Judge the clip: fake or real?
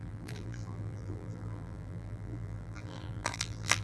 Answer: fake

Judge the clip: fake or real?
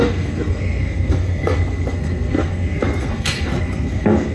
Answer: fake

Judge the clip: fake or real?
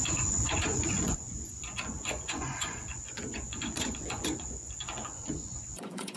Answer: fake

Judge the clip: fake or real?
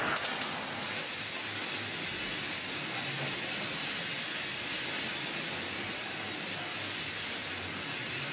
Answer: real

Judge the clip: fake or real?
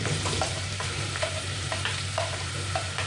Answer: fake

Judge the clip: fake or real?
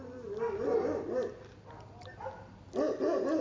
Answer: real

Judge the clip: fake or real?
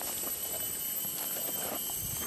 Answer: real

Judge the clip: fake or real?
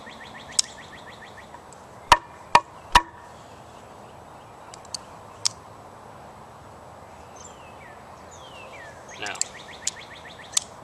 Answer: real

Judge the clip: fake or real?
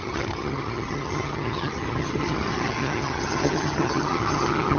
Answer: fake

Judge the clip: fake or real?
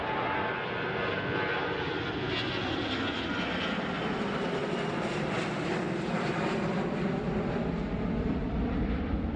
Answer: real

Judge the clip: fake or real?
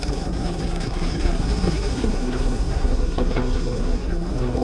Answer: fake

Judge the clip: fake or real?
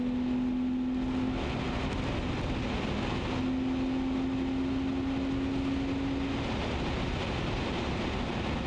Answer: real